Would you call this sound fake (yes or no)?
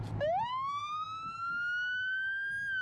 no